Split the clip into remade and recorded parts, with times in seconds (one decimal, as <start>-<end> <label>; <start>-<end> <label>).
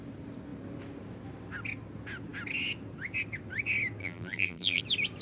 0.0-4.0 recorded; 4.0-4.8 remade; 4.8-5.2 recorded